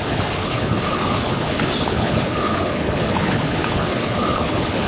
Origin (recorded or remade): remade